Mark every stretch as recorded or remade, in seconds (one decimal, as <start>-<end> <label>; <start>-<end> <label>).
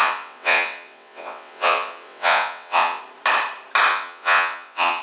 0.0-3.0 remade; 3.0-3.9 recorded; 3.9-5.0 remade